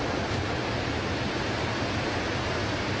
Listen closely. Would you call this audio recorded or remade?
remade